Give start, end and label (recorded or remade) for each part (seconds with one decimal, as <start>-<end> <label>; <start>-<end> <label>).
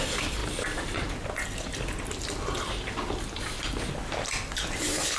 0.0-0.4 remade; 0.4-3.4 recorded; 3.4-5.2 remade